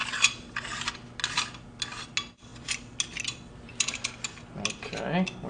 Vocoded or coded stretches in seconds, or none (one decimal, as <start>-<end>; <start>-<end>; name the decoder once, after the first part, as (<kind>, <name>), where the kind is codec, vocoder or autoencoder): none